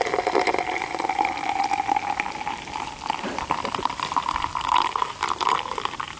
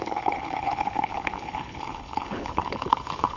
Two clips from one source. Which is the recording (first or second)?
first